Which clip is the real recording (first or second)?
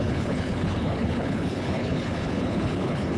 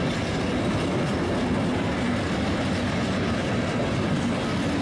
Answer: second